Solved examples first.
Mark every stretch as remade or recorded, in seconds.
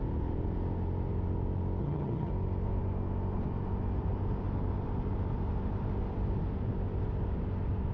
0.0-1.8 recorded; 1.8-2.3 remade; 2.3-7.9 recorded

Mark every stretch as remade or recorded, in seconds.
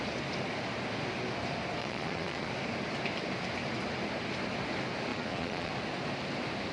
0.0-1.8 recorded; 1.8-2.5 remade; 2.5-5.1 recorded; 5.1-5.7 remade; 5.7-6.7 recorded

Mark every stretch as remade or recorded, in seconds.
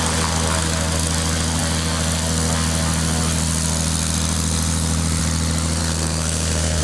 0.0-5.8 recorded; 5.8-6.8 remade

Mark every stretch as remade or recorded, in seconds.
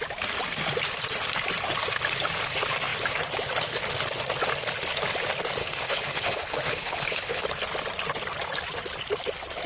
0.0-5.6 recorded; 5.6-7.4 remade; 7.4-9.7 recorded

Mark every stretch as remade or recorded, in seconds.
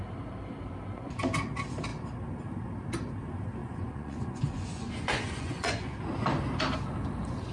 0.0-3.6 recorded; 3.6-5.9 remade; 5.9-7.5 recorded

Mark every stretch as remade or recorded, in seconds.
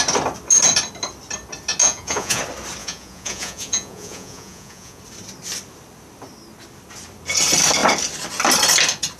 0.0-1.8 recorded; 1.8-2.4 remade; 2.4-2.8 recorded; 2.8-5.0 remade; 5.0-9.2 recorded